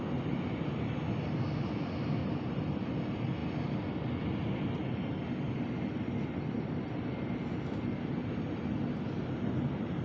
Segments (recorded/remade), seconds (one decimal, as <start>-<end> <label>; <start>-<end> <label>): 0.0-2.2 recorded; 2.2-2.8 remade; 2.8-10.0 recorded